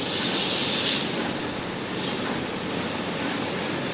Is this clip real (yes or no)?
yes